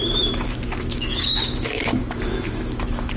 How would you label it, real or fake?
fake